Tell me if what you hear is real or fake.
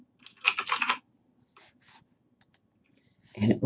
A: real